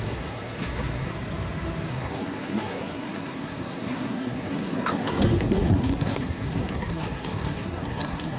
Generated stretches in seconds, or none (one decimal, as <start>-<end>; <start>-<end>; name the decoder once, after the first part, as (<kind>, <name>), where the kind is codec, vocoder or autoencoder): 0.0-1.1 (codec, SNAC); 1.9-8.4